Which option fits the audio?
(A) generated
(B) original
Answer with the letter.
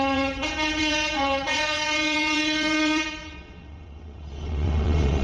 A